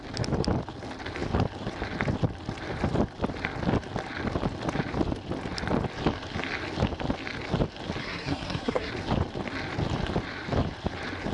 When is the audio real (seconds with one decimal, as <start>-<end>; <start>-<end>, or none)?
0.0-8.0; 8.9-11.3